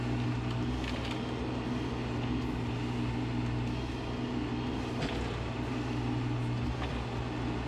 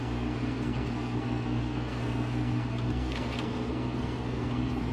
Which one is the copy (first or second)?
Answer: second